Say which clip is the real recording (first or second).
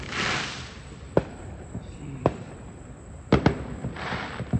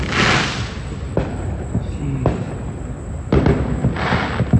second